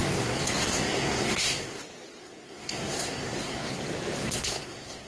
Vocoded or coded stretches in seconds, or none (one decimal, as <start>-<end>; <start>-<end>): 0.0-1.8; 2.2-3.8; 4.2-5.1